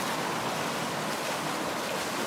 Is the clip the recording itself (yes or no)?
yes